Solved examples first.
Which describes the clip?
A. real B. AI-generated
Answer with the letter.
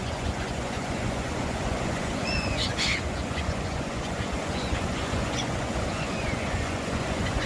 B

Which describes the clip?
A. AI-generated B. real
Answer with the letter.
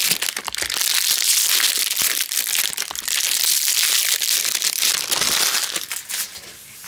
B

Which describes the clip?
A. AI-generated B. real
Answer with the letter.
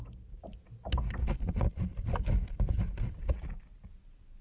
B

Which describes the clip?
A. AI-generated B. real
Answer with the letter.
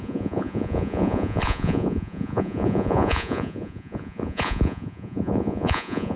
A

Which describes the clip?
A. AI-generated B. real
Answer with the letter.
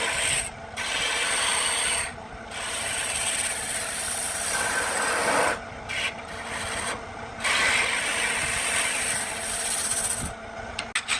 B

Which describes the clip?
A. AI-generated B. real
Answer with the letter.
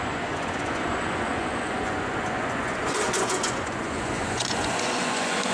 A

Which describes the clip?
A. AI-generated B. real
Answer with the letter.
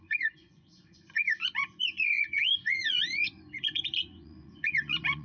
A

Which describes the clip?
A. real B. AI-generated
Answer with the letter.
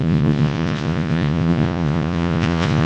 B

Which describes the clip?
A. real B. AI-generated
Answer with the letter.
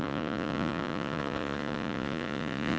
B